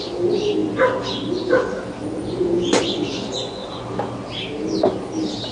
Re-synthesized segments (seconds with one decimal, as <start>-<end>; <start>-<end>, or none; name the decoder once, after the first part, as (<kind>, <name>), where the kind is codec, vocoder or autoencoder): 2.0-3.9 (vocoder, Vocos)